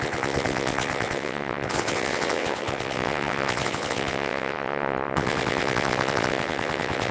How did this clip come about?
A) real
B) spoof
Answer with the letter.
B